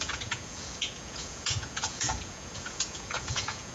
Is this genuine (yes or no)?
no